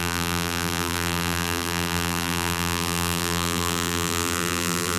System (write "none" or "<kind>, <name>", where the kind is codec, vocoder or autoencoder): vocoder, BigVGAN v2